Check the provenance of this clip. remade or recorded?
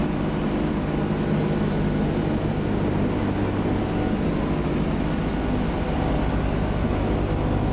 recorded